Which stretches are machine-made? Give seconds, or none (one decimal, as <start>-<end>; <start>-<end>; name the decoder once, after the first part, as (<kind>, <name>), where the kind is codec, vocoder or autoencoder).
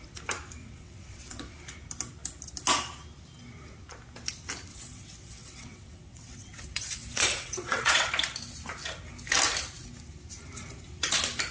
0.6-1.5 (vocoder, WaveNeXt); 4.7-8.1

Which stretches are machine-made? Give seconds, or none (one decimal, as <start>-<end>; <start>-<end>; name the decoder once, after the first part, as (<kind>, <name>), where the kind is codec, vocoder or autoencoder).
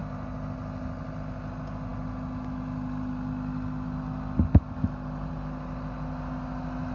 none